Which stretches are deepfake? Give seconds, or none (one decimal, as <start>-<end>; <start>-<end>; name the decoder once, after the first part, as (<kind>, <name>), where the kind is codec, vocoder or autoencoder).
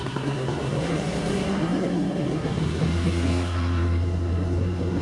0.0-5.0 (codec, SNAC)